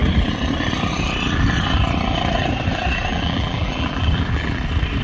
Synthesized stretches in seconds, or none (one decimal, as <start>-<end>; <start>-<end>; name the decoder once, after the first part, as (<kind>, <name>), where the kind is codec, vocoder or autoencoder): 3.1-4.6 (vocoder, BigVGAN v2)